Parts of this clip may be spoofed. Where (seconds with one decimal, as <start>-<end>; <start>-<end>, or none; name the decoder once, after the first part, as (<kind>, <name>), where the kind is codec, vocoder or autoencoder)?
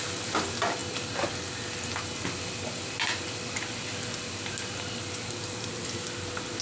none